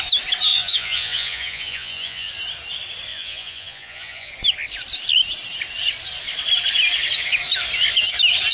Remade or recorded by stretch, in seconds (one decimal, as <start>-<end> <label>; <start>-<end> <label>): 0.0-0.5 recorded; 0.5-2.3 remade; 2.3-3.1 recorded; 3.1-4.3 remade; 4.3-8.5 recorded